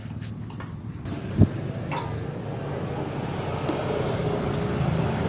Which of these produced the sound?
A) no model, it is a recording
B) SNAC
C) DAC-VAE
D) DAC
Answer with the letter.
A